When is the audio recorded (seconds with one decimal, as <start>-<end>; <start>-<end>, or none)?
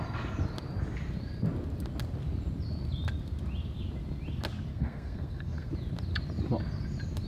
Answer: 0.0-4.7; 5.7-7.3